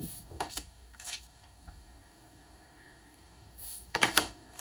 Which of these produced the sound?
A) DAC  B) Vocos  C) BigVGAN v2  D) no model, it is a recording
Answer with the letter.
A